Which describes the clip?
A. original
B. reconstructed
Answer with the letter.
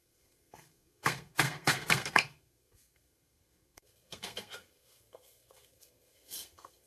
B